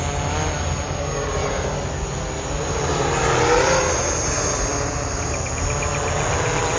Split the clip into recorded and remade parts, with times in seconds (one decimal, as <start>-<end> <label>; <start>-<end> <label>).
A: 0.0-6.8 recorded